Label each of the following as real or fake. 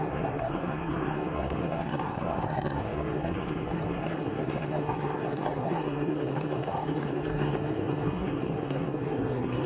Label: fake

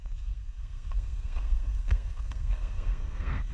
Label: fake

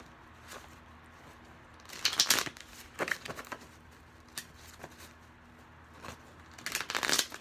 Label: real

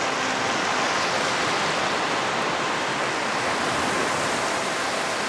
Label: real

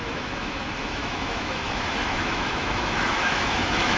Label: fake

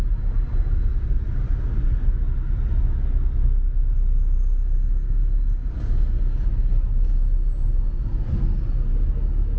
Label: real